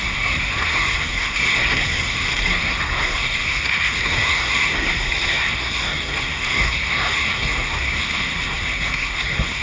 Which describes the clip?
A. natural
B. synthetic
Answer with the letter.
B